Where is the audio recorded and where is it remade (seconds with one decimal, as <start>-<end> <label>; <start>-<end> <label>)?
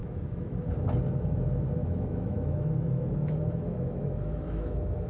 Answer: 0.0-0.6 remade; 0.6-1.8 recorded; 1.8-5.1 remade